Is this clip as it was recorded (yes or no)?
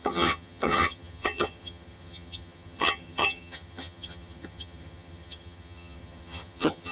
no